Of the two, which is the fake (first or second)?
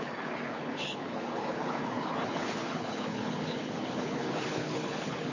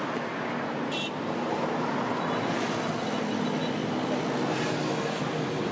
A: first